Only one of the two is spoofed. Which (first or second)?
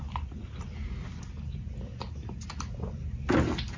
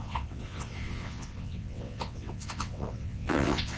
second